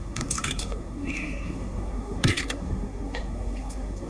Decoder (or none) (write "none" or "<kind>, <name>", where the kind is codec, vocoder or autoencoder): codec, SNAC